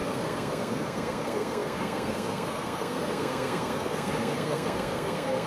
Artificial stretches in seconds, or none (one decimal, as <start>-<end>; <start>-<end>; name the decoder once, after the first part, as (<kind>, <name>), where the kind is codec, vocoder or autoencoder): 0.0-5.5 (codec, SNAC)